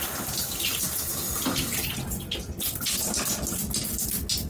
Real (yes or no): yes